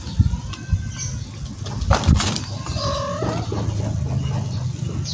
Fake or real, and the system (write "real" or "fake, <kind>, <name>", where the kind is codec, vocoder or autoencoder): real